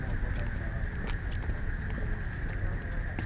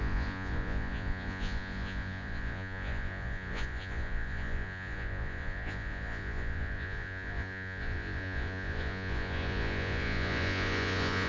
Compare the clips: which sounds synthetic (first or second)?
second